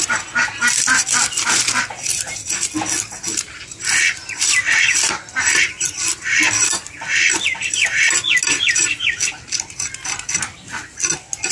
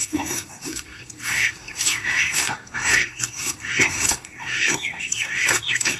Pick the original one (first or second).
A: first